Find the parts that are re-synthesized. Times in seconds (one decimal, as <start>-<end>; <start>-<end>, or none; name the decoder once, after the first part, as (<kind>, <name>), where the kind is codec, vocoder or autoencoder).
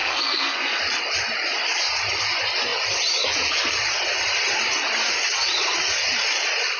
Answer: 0.0-0.8 (codec, SNAC)